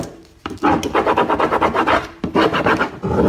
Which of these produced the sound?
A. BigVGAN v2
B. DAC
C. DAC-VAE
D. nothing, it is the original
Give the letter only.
D